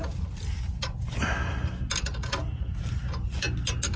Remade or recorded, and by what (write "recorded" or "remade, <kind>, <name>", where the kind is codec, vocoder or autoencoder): recorded